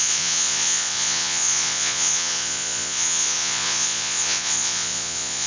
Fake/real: fake